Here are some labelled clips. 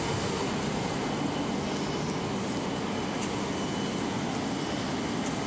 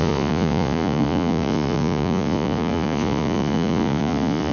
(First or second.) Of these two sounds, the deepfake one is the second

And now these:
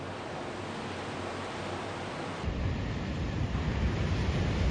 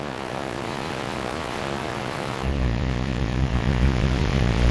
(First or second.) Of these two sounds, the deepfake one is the second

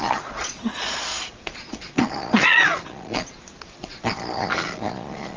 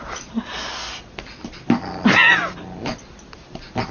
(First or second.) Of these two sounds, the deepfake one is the first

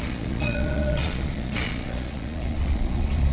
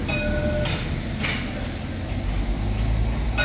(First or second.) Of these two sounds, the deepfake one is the first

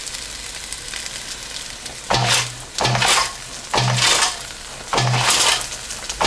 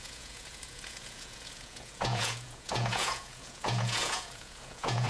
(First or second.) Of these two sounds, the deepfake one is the second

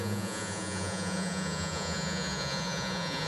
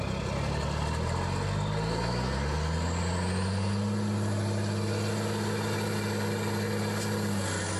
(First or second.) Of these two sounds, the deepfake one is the first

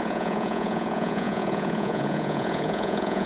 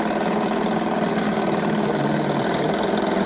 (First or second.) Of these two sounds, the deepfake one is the first